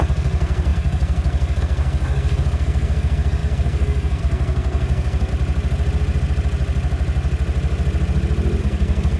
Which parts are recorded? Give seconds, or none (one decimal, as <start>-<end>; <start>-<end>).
5.3-8.6